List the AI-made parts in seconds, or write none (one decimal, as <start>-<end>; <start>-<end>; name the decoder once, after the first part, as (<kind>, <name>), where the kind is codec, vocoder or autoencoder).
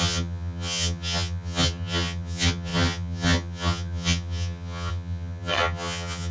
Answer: 0.0-6.3 (vocoder, HiFi-GAN)